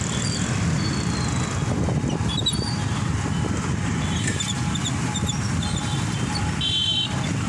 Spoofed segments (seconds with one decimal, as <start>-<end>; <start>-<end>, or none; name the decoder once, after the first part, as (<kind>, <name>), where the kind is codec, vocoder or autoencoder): 0.0-2.3 (vocoder, BigVGAN v2); 5.0-7.5